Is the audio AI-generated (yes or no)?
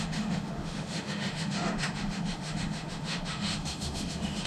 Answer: yes